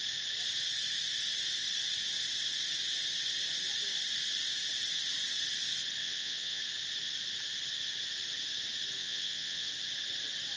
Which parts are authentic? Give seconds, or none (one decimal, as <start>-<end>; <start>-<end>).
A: 0.0-6.0; 6.6-9.0; 9.7-10.6